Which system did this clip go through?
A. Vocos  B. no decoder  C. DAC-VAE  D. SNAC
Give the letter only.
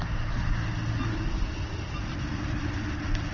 B